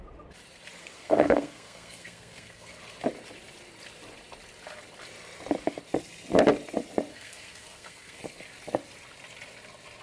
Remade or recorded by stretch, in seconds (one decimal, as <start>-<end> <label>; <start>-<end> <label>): 0.0-0.8 recorded; 0.8-2.8 remade; 2.8-7.1 recorded; 7.1-8.2 remade; 8.2-10.0 recorded

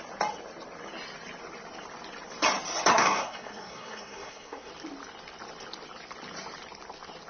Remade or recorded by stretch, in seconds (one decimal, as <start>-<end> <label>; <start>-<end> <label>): 0.0-2.9 recorded; 2.9-4.7 remade; 4.7-7.3 recorded

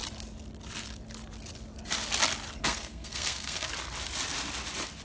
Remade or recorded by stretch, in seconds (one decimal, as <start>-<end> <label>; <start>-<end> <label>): 0.0-2.6 recorded; 2.6-3.7 remade; 3.7-5.0 recorded

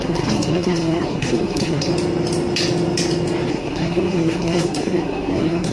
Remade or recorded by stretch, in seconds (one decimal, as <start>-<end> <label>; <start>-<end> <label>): 0.0-1.9 remade; 1.9-3.5 recorded; 3.5-5.7 remade

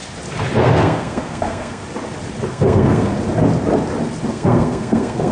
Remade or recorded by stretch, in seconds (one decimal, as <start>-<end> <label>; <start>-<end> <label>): 0.0-0.6 recorded; 0.6-1.8 remade; 1.8-2.5 recorded; 2.5-3.1 remade; 3.1-4.3 recorded; 4.3-5.3 remade

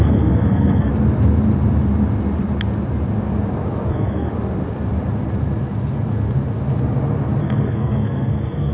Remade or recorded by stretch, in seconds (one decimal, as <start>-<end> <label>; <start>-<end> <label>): 0.0-0.9 remade; 0.9-3.9 recorded; 3.9-4.3 remade; 4.3-7.4 recorded; 7.4-8.7 remade

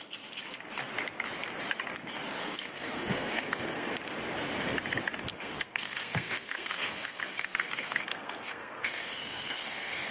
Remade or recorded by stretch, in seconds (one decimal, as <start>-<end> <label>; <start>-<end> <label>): 0.0-2.4 recorded; 2.4-3.9 remade; 3.9-5.3 recorded; 5.3-10.1 remade